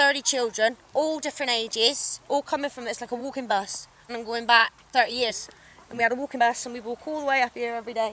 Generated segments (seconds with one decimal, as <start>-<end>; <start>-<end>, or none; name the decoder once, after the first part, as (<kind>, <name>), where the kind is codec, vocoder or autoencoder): 3.2-4.1 (vocoder, Vocos); 4.6-5.3; 5.7-6.4